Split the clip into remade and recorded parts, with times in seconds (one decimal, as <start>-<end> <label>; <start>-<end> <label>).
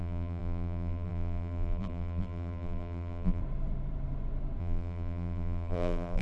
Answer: 0.0-3.4 remade; 3.4-4.6 recorded; 4.6-6.2 remade